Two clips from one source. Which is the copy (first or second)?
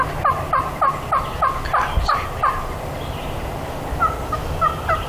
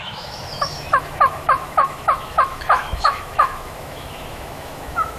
second